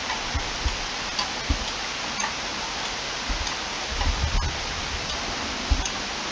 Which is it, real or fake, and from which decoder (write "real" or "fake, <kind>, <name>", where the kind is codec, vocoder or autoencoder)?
real